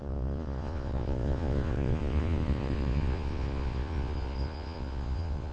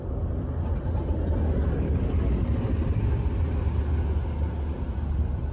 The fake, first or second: first